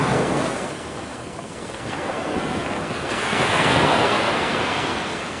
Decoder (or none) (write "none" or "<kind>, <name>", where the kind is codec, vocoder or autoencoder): codec, SNAC